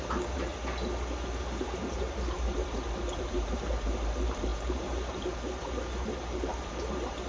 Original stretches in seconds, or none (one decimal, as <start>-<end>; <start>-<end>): 0.5-1.6